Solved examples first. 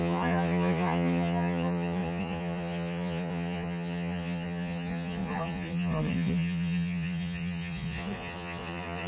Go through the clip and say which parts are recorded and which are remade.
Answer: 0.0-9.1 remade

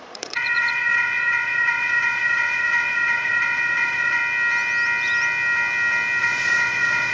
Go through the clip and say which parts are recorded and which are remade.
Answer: 0.0-4.2 remade; 4.2-6.2 recorded; 6.2-7.1 remade

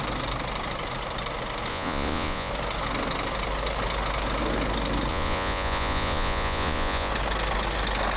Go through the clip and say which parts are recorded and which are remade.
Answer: 0.0-1.7 recorded; 1.7-2.5 remade; 2.5-5.1 recorded; 5.1-7.1 remade; 7.1-8.2 recorded

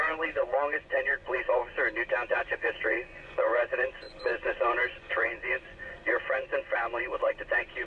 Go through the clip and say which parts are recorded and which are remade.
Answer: 0.0-1.6 remade; 1.6-2.3 recorded; 2.3-7.9 remade

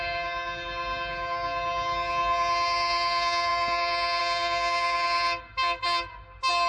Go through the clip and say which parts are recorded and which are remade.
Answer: 0.0-6.7 recorded